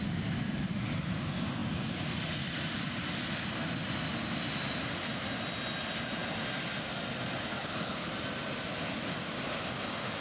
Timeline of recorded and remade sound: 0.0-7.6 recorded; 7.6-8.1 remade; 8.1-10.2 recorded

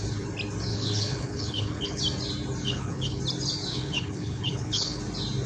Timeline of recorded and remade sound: 0.0-0.7 recorded; 0.7-2.0 remade; 2.0-2.6 recorded; 2.6-3.2 remade; 3.2-3.7 recorded; 3.7-5.0 remade; 5.0-5.5 recorded

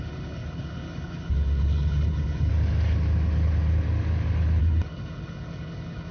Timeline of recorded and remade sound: 0.0-2.5 remade; 2.5-4.6 recorded; 4.6-6.1 remade

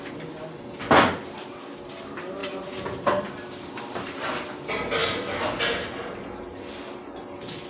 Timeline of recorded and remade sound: 0.0-7.7 recorded

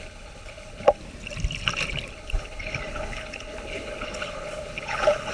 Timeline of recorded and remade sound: 0.0-1.0 remade; 1.0-2.1 recorded; 2.1-5.3 remade

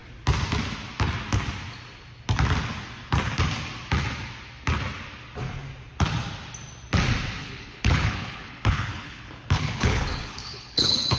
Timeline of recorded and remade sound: 0.0-7.4 recorded; 7.4-11.2 remade

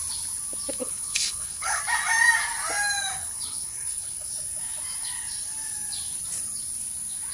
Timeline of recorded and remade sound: 0.0-0.8 recorded; 0.8-1.8 remade; 1.8-3.2 recorded; 3.2-4.3 remade; 4.3-7.3 recorded

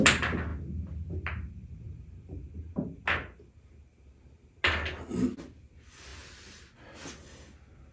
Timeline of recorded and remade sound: 0.0-7.9 recorded